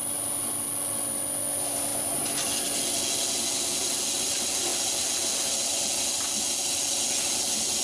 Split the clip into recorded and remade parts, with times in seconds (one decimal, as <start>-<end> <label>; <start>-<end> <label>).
0.0-7.8 recorded